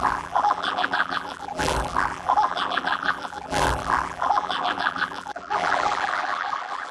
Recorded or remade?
remade